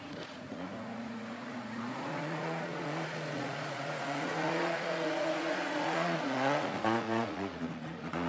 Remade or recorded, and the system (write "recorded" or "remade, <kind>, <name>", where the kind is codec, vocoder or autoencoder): remade, vocoder, Vocos